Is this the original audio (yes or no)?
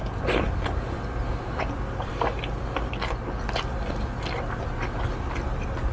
yes